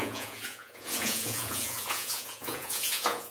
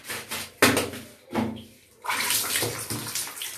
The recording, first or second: second